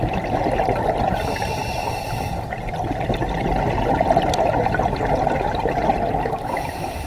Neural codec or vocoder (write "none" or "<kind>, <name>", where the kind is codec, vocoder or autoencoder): none